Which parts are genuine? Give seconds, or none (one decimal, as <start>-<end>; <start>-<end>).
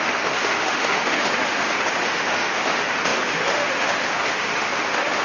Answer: none